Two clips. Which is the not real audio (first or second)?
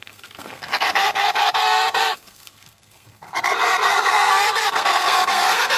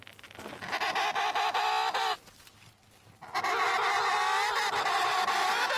first